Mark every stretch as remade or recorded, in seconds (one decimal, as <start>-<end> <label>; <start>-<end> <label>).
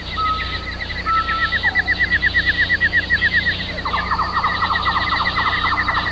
0.0-6.1 recorded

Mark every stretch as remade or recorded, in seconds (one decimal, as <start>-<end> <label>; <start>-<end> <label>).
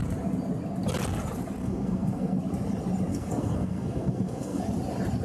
0.0-1.6 recorded; 1.6-2.4 remade; 2.4-3.1 recorded; 3.1-4.6 remade; 4.6-5.2 recorded